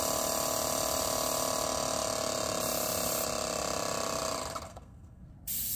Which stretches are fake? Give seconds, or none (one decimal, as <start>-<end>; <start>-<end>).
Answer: 4.7-5.3